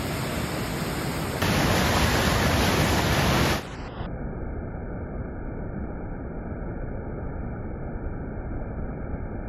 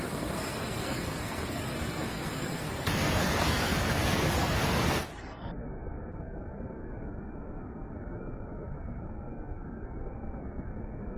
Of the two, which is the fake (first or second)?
second